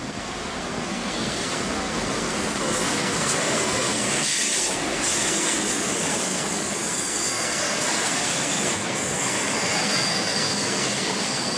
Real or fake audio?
fake